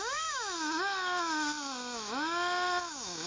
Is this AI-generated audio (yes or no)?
yes